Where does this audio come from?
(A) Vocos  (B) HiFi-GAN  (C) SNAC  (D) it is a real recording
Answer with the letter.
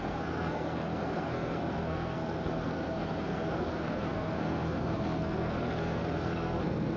C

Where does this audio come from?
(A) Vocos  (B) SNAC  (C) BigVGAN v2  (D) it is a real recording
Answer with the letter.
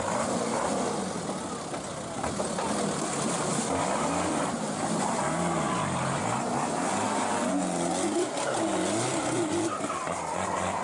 D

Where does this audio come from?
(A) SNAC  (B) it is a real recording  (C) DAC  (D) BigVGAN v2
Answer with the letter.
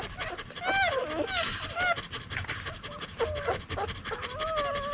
B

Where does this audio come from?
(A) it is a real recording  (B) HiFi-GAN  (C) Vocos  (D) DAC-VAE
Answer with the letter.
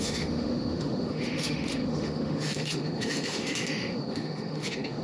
D